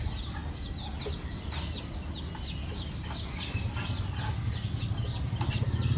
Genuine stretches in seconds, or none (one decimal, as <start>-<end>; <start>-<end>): 0.0-6.0